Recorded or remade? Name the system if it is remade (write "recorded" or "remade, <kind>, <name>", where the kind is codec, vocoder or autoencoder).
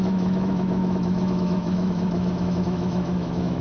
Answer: remade, autoencoder, DAC-VAE